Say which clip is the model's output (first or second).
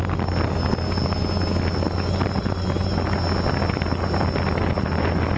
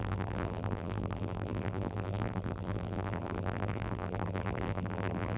second